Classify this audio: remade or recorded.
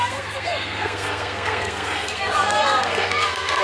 remade